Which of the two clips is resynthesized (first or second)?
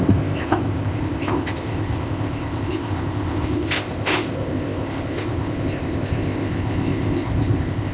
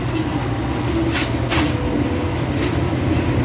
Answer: first